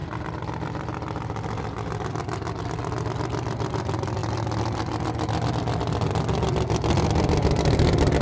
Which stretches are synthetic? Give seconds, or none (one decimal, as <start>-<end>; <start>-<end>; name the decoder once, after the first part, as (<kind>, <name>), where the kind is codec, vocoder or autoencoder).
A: none